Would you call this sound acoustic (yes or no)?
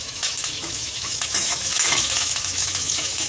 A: no